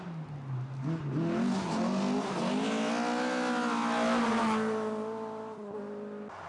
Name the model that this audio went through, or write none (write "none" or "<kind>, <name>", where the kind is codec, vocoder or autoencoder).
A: none